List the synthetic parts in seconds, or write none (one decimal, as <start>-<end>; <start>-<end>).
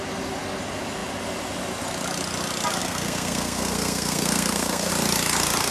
2.8-4.9